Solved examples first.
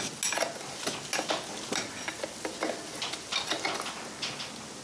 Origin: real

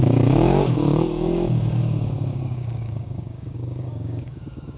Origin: fake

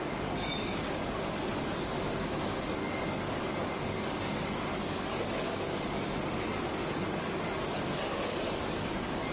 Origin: fake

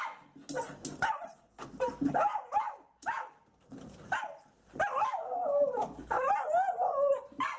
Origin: real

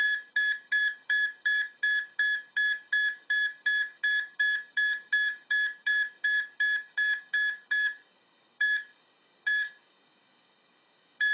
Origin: fake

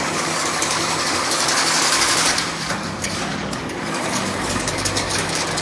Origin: fake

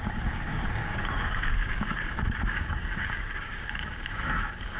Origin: fake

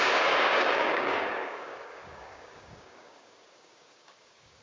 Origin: fake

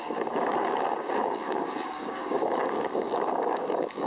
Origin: fake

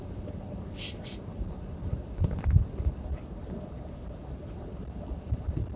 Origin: real